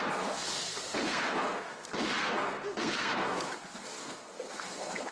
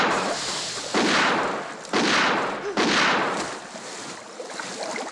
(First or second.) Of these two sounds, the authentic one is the second